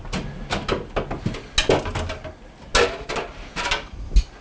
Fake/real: real